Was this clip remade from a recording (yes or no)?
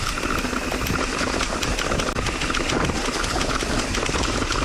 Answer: no